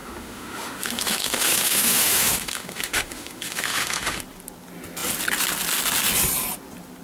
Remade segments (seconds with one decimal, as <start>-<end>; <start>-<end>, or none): 0.0-4.2